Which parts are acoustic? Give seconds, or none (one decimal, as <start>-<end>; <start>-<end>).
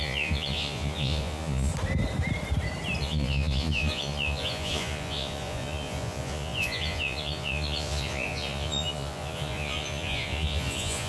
1.7-3.0